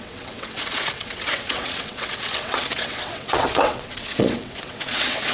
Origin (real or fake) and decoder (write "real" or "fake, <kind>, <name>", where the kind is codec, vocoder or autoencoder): fake, vocoder, WaveNeXt